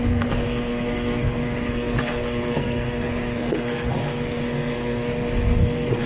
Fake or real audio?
fake